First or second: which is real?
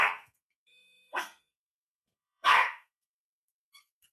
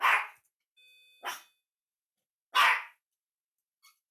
second